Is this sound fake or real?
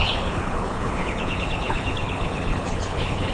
fake